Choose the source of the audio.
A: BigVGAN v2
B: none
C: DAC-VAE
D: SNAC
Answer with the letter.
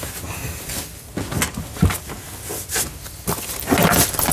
B